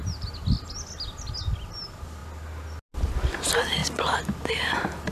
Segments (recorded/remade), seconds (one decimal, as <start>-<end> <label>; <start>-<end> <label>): 0.0-5.1 recorded